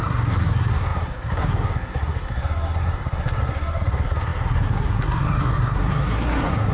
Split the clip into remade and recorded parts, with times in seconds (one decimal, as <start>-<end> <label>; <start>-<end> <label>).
0.0-6.7 remade